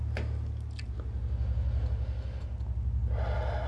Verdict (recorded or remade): recorded